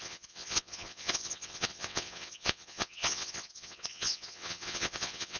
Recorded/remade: remade